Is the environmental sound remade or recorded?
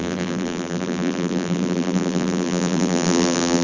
remade